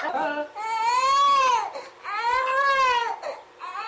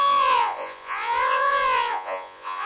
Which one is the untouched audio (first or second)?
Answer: first